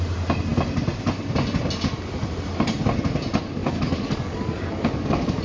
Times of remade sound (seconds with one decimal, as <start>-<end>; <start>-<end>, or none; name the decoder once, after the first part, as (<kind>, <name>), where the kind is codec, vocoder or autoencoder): 3.6-5.4 (codec, DAC)